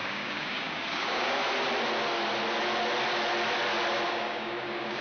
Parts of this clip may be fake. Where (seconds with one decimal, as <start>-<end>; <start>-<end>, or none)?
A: 0.0-1.4; 4.1-5.0